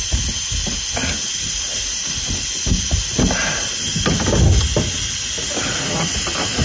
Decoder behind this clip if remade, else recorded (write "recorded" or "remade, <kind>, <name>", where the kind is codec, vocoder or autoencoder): recorded